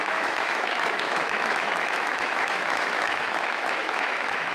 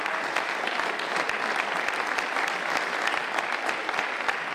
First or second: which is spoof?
first